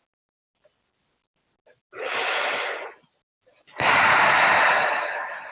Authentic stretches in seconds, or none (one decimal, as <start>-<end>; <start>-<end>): 0.0-5.5